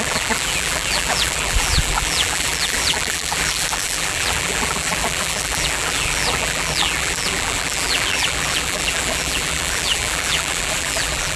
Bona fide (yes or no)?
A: no